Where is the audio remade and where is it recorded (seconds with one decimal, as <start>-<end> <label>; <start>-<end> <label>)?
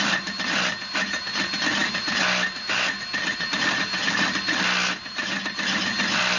0.0-6.4 recorded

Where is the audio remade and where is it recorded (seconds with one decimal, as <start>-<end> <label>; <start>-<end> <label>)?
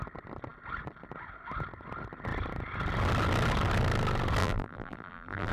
0.0-4.4 recorded; 4.4-5.5 remade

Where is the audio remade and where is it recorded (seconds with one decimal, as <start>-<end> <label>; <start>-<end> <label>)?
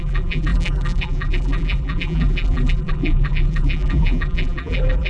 0.0-5.1 remade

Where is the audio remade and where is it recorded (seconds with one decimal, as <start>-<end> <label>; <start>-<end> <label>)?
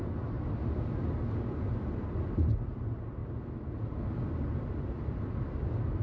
0.0-6.0 recorded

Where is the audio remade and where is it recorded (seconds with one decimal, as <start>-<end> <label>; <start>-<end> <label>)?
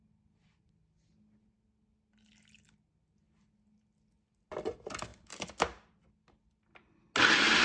0.0-5.1 recorded; 5.1-6.1 remade; 6.1-7.6 recorded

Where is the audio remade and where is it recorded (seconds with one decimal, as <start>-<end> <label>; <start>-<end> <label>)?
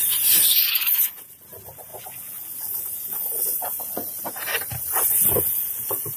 0.0-1.3 recorded; 1.3-1.9 remade; 1.9-2.6 recorded; 2.6-6.2 remade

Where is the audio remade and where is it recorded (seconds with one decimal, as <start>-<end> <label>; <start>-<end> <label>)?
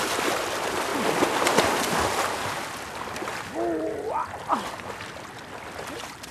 0.0-6.3 recorded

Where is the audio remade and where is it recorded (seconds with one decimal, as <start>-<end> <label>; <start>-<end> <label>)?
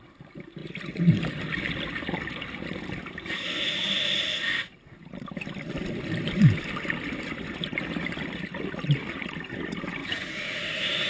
0.0-10.0 recorded; 10.0-10.5 remade; 10.5-11.1 recorded